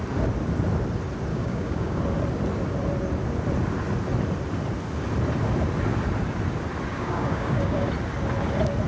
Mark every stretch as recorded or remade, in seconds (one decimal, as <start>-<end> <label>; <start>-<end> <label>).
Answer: 0.0-1.3 recorded; 1.3-2.0 remade; 2.0-6.9 recorded; 6.9-7.9 remade; 7.9-8.9 recorded